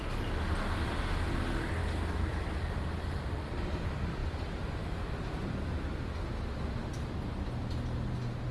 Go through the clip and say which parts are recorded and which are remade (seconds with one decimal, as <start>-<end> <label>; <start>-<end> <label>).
0.0-8.5 recorded